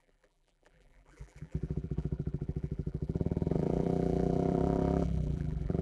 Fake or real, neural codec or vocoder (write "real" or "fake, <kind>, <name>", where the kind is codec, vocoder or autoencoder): fake, vocoder, BigVGAN v2